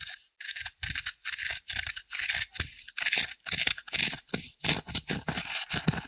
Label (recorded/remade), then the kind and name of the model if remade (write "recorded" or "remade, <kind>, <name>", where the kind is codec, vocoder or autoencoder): recorded